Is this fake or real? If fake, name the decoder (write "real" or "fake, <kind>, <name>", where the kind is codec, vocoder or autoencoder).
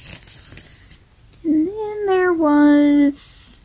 real